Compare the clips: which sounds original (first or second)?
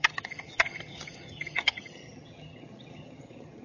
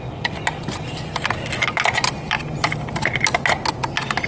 second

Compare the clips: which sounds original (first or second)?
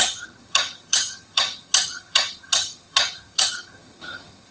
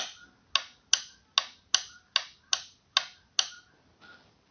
second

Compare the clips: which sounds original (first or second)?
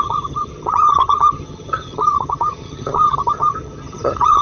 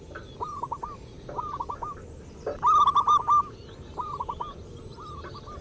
second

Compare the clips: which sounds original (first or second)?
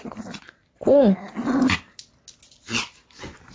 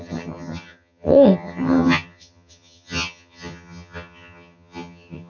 first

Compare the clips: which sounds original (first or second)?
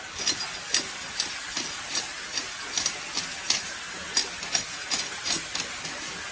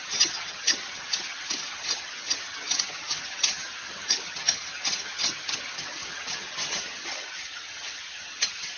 first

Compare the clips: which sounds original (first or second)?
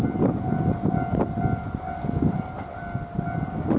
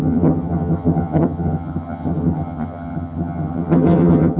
first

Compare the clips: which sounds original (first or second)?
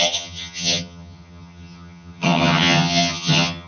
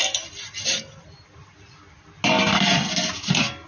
second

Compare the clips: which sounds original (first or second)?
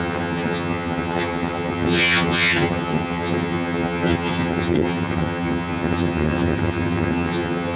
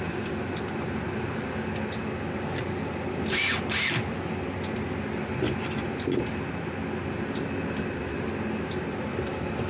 second